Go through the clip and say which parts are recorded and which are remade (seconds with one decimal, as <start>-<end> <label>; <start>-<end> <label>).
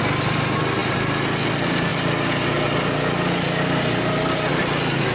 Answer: 0.0-0.8 recorded; 0.8-1.5 remade; 1.5-5.1 recorded